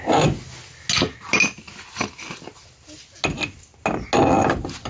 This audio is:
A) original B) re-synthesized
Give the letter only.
A